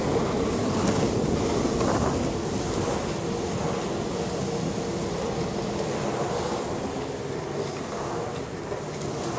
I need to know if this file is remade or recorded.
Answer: recorded